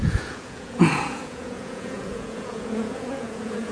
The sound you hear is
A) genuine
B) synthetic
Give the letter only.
B